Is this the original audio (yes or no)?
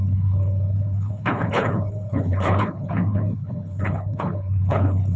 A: no